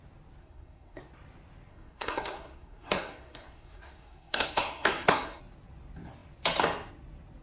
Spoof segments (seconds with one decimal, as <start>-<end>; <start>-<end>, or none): 0.4-1.0; 1.7-5.4